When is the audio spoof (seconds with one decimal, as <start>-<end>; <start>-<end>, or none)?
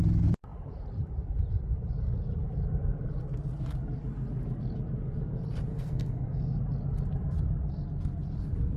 5.7-6.6